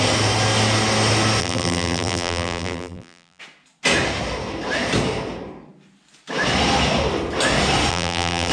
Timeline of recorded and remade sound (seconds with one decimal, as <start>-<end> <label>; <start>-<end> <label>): 0.0-1.4 recorded; 1.4-3.4 remade; 3.4-7.9 recorded; 7.9-8.5 remade